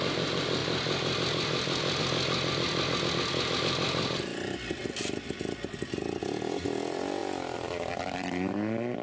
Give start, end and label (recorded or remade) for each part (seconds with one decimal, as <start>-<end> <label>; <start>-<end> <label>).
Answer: 0.0-0.6 recorded; 0.6-2.0 remade; 2.0-4.3 recorded; 4.3-4.8 remade; 4.8-9.0 recorded